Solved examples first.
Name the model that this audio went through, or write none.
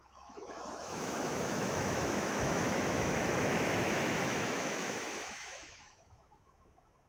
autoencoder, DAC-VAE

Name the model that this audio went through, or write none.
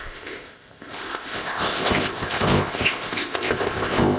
codec, ZipCodec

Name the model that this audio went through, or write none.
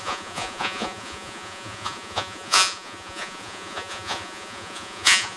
vocoder, Vocos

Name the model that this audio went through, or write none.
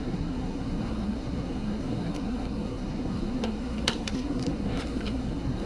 codec, SNAC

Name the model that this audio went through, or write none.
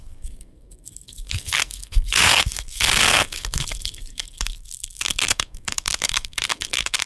codec, SNAC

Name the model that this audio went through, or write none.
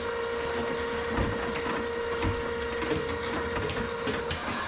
none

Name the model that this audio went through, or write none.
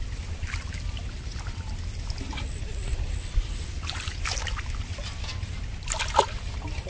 none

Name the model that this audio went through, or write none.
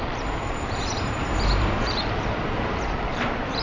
vocoder, BigVGAN v2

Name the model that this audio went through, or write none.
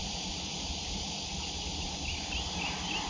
none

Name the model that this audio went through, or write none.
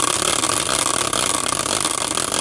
none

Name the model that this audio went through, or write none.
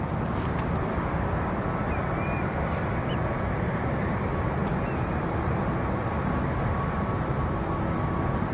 none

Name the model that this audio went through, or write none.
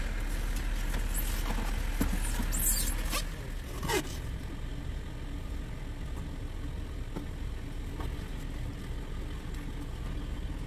none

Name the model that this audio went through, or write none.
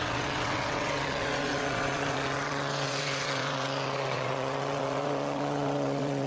vocoder, WaveNeXt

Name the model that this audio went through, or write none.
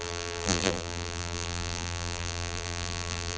vocoder, BigVGAN v2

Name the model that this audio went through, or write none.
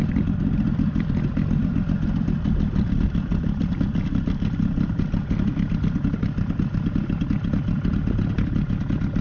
none